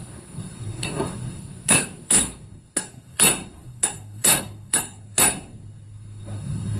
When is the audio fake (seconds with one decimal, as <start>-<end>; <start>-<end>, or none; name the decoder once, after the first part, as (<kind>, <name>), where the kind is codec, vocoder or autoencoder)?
0.0-6.8 (codec, SNAC)